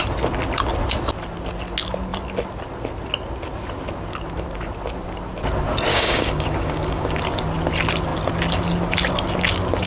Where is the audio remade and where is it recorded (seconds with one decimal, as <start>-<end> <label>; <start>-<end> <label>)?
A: 0.0-5.9 recorded; 5.9-7.2 remade; 7.2-9.9 recorded